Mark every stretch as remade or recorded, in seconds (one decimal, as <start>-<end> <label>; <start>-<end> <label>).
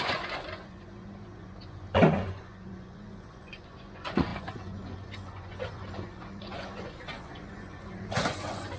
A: 0.0-8.8 remade